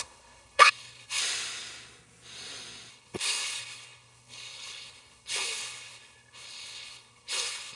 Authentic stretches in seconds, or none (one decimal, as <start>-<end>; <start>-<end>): 1.2-2.9